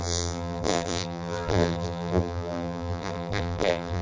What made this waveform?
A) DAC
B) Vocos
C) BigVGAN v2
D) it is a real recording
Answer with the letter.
C